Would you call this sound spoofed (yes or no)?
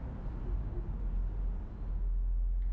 no